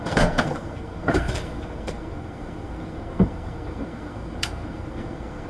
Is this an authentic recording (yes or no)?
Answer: no